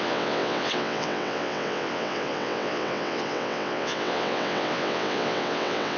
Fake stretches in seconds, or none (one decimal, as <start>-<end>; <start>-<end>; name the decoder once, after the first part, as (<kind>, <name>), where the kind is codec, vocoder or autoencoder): 0.0-6.0 (vocoder, WaveNeXt)